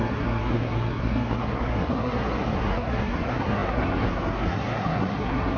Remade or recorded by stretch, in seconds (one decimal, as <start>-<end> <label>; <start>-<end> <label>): 0.0-5.6 remade